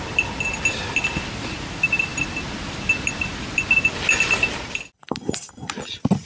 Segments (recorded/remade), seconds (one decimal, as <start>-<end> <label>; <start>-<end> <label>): 0.0-6.3 recorded